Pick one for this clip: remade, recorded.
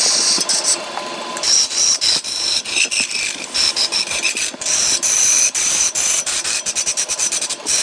recorded